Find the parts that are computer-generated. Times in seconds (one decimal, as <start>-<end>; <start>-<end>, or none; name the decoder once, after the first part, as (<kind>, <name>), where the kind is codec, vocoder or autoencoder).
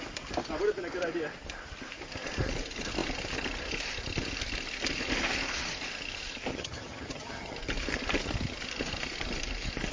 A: 6.5-7.5 (vocoder, HiFi-GAN)